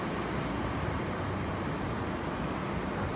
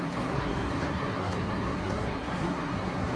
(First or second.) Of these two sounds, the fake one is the second